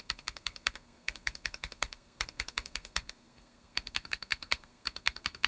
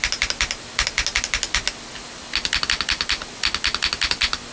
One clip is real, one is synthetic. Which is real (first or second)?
second